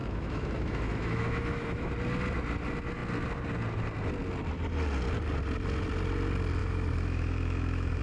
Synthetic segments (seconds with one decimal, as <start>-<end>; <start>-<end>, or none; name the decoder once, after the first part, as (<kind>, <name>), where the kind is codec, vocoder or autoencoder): 0.0-1.9 (autoencoder, DAC-VAE); 6.6-8.0